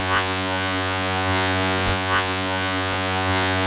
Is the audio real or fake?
fake